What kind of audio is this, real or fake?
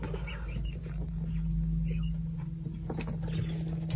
real